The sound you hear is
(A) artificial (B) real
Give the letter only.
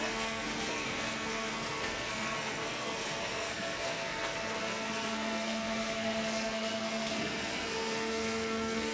A